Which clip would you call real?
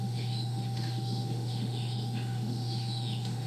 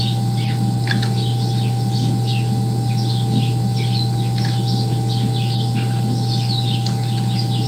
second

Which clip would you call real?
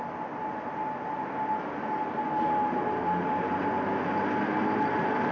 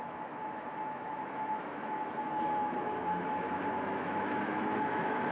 first